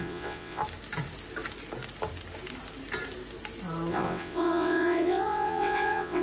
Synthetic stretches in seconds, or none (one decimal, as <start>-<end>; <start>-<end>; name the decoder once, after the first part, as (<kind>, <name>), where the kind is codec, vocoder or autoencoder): 0.0-0.6 (vocoder, WaveNeXt); 3.9-6.2

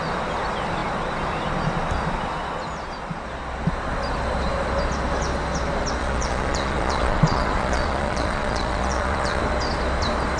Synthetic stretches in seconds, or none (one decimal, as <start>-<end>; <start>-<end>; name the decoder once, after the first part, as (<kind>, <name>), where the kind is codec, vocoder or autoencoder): 6.0-9.4 (vocoder, Vocos)

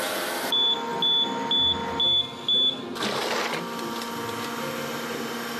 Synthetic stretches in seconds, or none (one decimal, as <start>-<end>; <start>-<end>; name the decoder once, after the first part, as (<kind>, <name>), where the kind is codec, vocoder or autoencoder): none

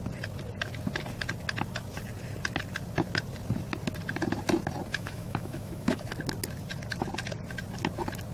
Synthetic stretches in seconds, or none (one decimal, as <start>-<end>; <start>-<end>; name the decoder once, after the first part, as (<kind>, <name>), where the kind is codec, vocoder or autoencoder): 4.9-6.1 (autoencoder, DAC-VAE)

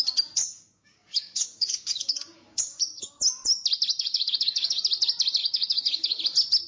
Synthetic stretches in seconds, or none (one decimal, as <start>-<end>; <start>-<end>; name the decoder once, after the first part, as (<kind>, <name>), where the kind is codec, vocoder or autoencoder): 0.4-3.1 (codec, DAC); 3.9-4.8; 5.4-6.2

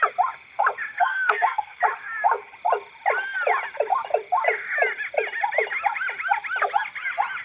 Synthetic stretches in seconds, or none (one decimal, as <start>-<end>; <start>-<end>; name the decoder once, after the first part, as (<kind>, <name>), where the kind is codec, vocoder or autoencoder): 1.0-1.8 (codec, SNAC)

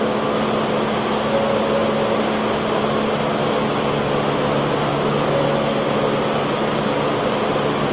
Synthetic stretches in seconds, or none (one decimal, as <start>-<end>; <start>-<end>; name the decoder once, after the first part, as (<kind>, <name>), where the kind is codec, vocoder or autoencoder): 4.9-6.7 (autoencoder, DAC-VAE)